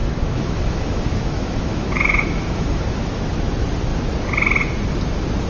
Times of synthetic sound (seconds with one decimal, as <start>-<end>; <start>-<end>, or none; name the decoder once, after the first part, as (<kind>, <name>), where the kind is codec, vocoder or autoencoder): 0.0-3.3 (autoencoder, DAC-VAE)